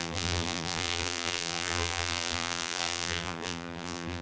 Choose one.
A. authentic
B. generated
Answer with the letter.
B